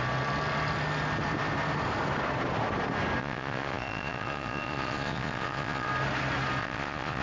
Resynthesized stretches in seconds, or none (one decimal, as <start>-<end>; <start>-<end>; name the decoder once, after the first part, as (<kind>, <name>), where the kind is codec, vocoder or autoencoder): 3.2-5.9 (vocoder, Vocos); 6.6-7.2